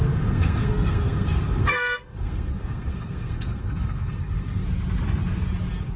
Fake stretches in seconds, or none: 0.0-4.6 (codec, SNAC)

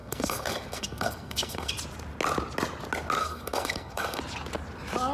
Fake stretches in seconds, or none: 0.0-1.7 (codec, SNAC); 3.2-4.2

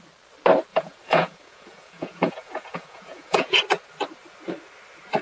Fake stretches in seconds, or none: 0.7-3.6 (vocoder, Vocos)

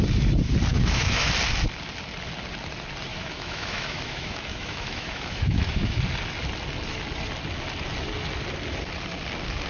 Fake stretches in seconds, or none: 0.7-1.3 (autoencoder, DAC-VAE); 3.1-6.0